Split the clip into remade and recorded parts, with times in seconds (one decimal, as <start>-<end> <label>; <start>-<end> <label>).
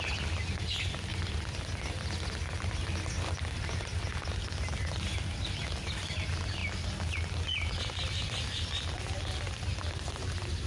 0.0-1.1 recorded; 1.1-2.3 remade; 2.3-10.7 recorded